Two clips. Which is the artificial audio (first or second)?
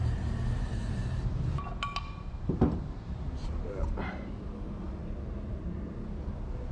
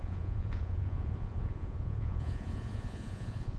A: second